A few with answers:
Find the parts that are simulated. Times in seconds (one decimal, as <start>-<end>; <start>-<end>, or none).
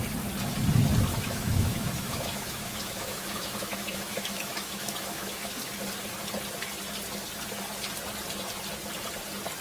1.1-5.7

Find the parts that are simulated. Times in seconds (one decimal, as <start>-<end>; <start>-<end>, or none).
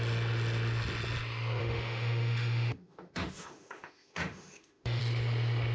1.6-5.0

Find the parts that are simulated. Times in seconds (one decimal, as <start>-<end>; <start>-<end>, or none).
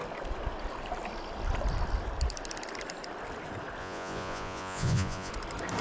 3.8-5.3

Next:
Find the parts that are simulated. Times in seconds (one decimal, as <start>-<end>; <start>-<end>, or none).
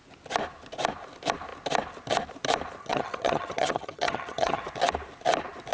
2.8-4.6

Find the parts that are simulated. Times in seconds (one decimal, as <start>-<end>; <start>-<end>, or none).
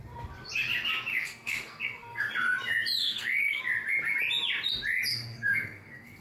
1.1-2.3; 3.0-3.6; 5.1-6.2